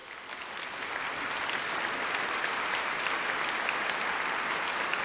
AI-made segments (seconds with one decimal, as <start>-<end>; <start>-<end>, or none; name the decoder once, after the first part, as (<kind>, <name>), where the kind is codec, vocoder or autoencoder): none